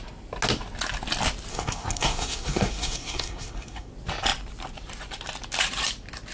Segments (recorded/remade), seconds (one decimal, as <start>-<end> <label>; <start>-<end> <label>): 0.0-1.5 recorded; 1.5-3.9 remade; 3.9-6.3 recorded